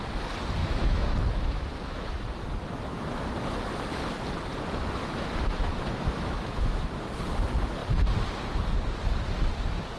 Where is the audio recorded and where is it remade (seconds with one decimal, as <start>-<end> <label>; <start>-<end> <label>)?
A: 0.0-0.6 recorded; 0.6-3.3 remade; 3.3-5.0 recorded; 5.0-6.9 remade; 6.9-10.0 recorded

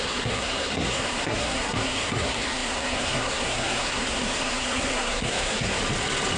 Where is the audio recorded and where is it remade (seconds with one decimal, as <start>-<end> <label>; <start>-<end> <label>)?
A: 0.0-5.8 remade; 5.8-6.4 recorded

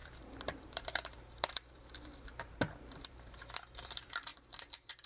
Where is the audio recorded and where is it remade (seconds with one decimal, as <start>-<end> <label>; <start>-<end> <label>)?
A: 0.0-5.1 remade

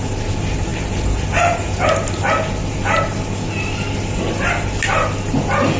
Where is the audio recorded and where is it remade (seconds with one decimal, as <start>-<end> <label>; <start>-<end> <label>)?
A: 0.0-5.8 recorded

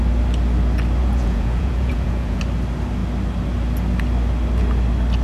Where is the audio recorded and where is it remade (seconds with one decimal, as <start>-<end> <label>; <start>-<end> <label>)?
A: 0.0-1.0 recorded; 1.0-2.4 remade; 2.4-5.2 recorded